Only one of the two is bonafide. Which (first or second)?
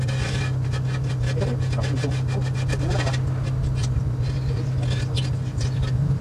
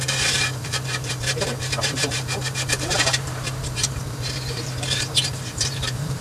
first